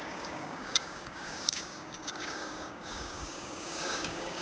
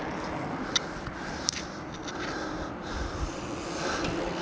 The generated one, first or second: first